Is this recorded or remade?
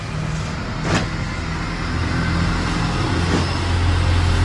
recorded